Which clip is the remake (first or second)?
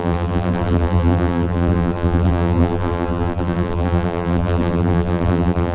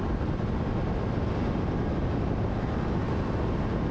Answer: first